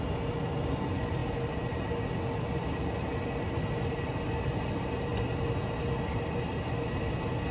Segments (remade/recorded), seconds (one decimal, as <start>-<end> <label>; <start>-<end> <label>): 0.0-7.5 recorded